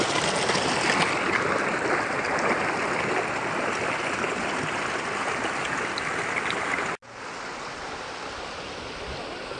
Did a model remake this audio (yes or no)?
no